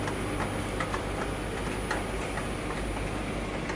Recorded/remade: recorded